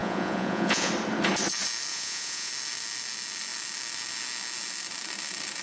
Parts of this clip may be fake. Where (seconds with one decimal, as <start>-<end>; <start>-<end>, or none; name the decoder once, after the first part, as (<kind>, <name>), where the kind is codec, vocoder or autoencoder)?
0.0-0.9 (vocoder, Vocos); 1.9-2.5